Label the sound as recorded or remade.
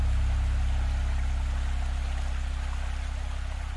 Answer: recorded